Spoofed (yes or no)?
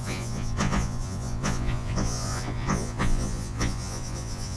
yes